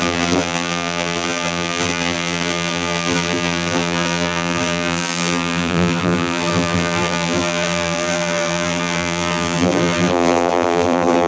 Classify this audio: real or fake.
fake